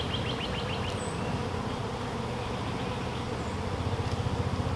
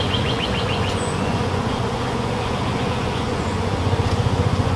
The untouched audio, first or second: first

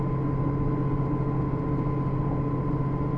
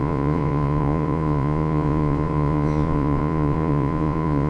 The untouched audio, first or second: first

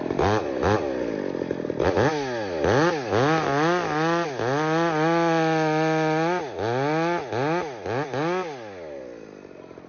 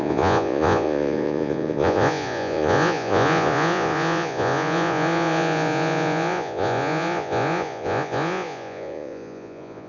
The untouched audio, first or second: first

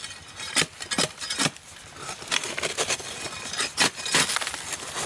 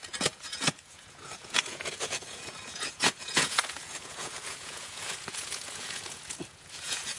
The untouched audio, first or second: first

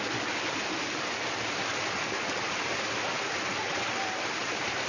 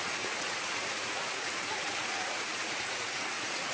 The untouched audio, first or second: first